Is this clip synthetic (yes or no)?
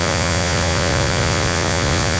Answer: yes